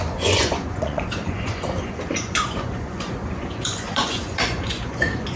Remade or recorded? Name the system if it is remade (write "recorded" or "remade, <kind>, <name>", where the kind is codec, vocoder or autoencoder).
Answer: remade, vocoder, Vocos